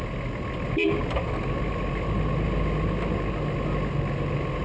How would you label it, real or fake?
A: real